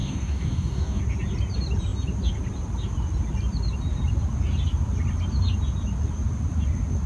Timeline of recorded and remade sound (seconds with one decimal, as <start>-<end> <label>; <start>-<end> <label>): 0.0-1.0 remade; 1.0-7.1 recorded